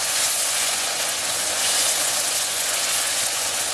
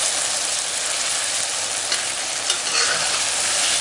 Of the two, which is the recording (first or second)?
second